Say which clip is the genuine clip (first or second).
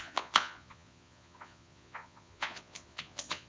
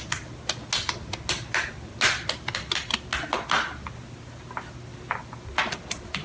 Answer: second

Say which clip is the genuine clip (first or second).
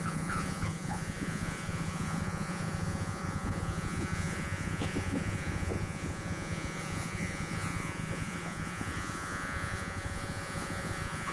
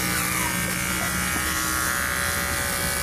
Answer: second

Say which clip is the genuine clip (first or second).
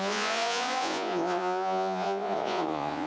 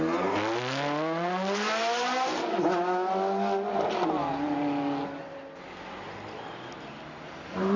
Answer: second